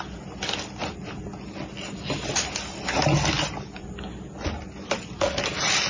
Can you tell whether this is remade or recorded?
recorded